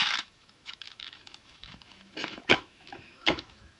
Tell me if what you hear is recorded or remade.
remade